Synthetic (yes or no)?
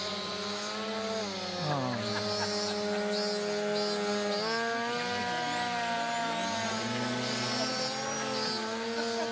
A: no